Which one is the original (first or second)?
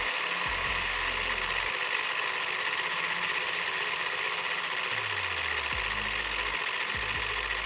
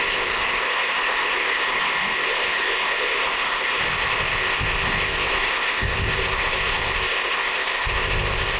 first